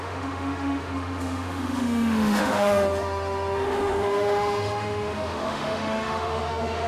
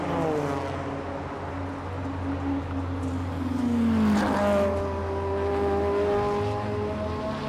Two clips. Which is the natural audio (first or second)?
second